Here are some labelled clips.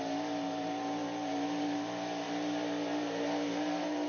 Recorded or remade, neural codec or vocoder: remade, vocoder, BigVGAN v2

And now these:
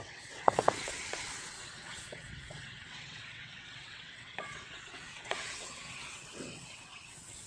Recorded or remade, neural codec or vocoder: remade, vocoder, WaveNeXt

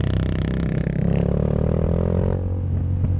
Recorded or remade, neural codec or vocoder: recorded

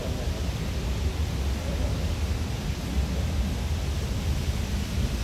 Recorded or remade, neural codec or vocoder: recorded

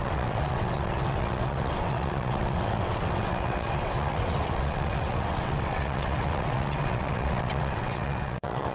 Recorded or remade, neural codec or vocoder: remade, vocoder, WaveNeXt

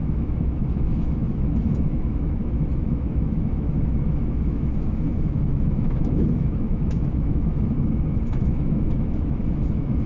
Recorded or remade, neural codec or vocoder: remade, autoencoder, DAC-VAE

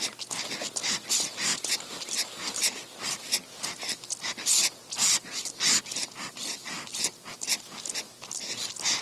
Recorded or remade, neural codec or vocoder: recorded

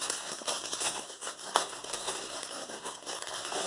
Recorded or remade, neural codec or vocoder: remade, codec, SNAC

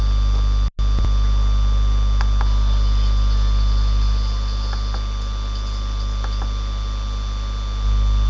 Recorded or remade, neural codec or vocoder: recorded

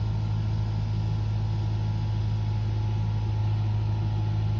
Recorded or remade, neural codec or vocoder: recorded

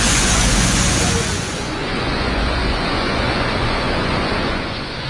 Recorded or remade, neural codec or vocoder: remade, vocoder, Vocos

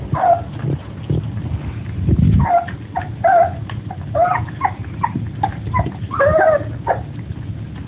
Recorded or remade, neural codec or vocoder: recorded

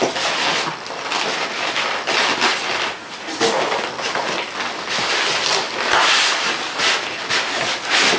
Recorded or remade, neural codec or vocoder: recorded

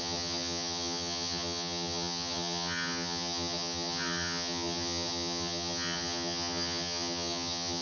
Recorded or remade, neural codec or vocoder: remade, vocoder, HiFi-GAN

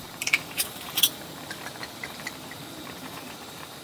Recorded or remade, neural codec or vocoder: remade, vocoder, BigVGAN v2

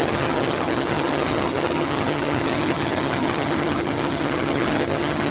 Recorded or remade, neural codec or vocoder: remade, vocoder, HiFi-GAN